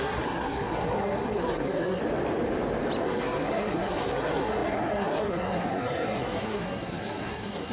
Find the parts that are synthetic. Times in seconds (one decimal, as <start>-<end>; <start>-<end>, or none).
0.0-2.0; 3.0-7.7